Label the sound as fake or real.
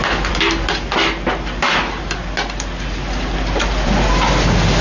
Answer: real